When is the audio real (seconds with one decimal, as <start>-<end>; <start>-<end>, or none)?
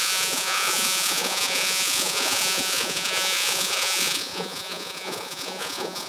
none